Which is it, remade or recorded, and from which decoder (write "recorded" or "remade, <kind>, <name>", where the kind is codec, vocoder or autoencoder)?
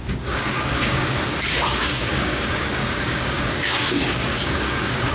remade, codec, DAC